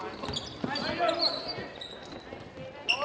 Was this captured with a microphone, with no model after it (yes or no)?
yes